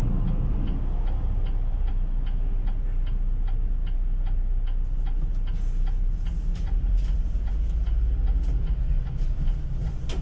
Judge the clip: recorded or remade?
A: recorded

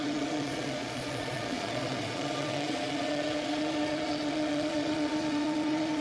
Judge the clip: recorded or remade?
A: remade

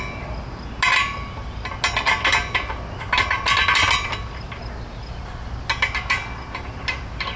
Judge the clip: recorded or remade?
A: recorded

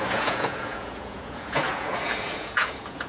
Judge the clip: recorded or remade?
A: remade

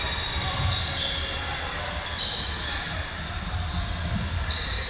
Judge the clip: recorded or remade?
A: recorded